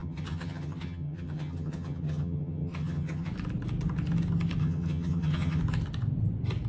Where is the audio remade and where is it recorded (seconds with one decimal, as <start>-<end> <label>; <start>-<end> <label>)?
0.0-3.3 remade; 3.3-4.6 recorded; 4.6-5.6 remade; 5.6-6.7 recorded